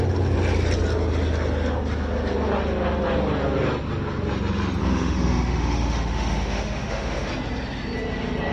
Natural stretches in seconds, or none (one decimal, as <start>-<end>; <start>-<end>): 0.0-4.8; 7.3-8.5